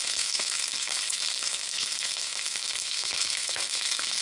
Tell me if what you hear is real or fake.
fake